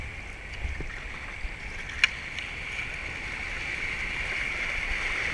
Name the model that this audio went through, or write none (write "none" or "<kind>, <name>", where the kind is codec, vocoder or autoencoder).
none